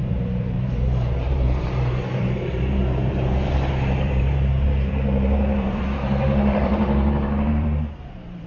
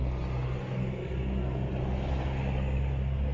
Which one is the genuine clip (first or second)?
second